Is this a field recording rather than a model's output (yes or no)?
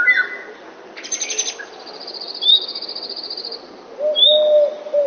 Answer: yes